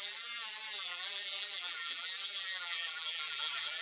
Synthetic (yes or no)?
yes